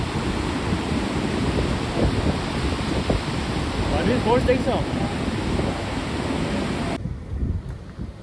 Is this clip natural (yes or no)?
yes